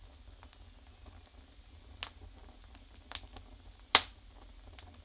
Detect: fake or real real